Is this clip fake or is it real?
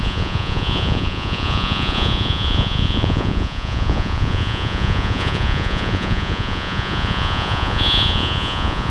fake